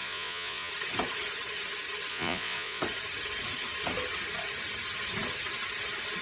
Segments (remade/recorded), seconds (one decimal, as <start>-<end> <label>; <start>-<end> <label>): 0.0-0.7 remade; 0.7-2.1 recorded; 2.1-2.8 remade; 2.8-6.2 recorded